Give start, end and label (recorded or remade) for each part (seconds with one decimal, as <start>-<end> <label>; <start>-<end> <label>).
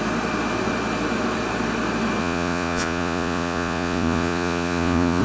0.0-2.2 recorded; 2.2-5.2 remade